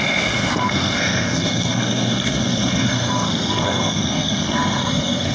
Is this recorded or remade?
remade